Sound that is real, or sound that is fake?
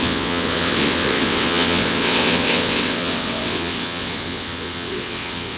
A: fake